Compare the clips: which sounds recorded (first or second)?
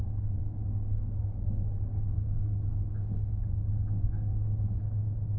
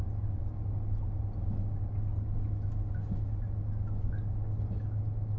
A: second